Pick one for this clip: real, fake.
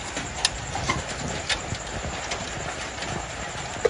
real